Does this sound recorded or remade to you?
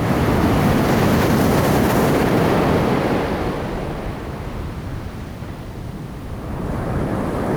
recorded